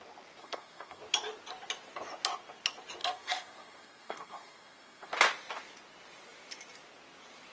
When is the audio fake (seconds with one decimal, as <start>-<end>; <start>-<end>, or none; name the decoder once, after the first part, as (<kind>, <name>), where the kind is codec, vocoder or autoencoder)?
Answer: 0.4-1.0 (codec, SNAC); 3.0-5.1